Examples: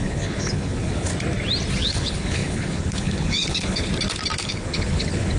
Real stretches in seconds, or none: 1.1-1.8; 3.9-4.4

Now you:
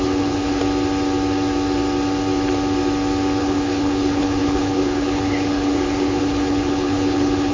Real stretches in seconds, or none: 0.6-3.4

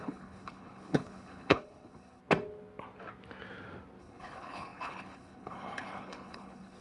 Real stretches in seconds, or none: 2.2-4.0

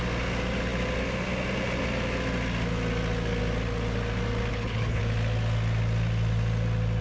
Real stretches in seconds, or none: 0.0-4.5; 5.0-7.0

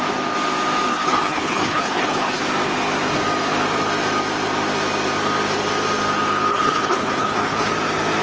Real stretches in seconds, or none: 0.0-0.9; 2.4-6.5; 7.7-8.2

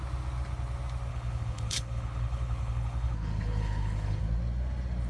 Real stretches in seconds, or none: 0.0-1.1; 4.2-5.1

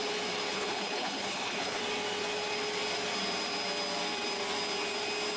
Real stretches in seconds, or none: 0.0-0.5; 1.8-5.4